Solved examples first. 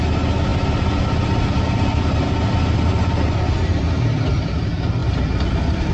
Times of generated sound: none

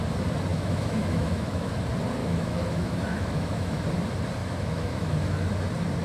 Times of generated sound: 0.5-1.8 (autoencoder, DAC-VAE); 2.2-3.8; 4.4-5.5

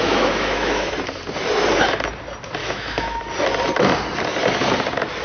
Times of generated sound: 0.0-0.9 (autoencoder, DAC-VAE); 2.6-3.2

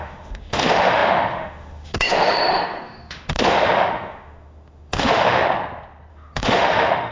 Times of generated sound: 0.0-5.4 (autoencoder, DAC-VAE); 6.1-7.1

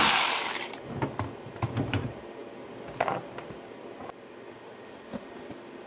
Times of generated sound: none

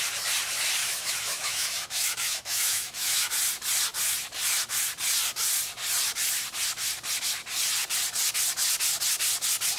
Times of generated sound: 0.8-3.3 (autoencoder, DAC-VAE)